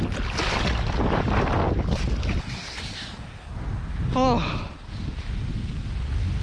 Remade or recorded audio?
recorded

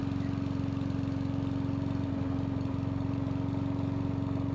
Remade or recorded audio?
recorded